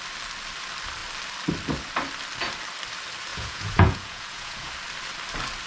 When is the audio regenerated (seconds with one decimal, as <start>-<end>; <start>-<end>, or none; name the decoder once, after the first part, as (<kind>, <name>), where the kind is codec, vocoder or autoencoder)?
3.3-4.7 (vocoder, Vocos)